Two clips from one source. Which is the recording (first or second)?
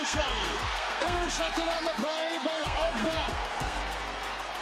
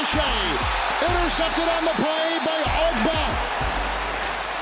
second